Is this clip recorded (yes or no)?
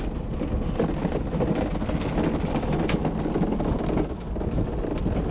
yes